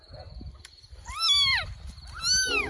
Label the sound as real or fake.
real